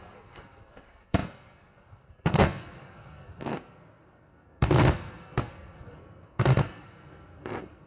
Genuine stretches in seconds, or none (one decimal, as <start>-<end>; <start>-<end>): none